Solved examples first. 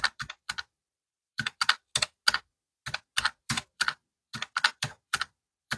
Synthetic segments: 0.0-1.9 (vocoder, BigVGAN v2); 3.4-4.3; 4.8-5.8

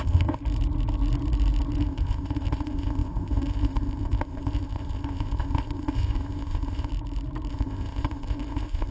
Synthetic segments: 0.0-0.4 (codec, ZipCodec); 1.8-6.9; 7.5-8.9

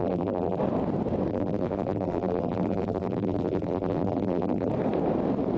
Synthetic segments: 0.0-0.6 (vocoder, BigVGAN v2); 1.3-4.7